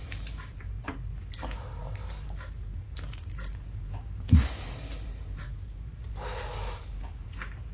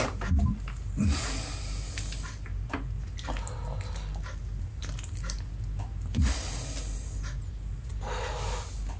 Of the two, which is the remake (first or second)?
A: first